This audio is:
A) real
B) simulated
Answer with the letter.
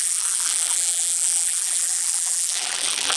B